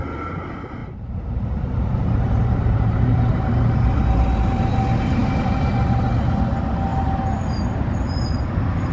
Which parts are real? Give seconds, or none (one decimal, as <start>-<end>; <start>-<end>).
0.0-0.8; 3.5-8.9